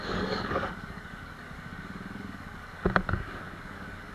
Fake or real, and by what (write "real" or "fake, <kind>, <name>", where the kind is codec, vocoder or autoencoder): fake, codec, DAC